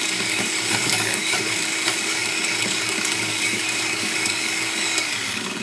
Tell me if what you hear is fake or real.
fake